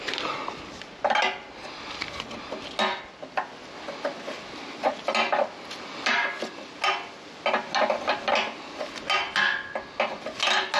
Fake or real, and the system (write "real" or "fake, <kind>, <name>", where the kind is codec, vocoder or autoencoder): real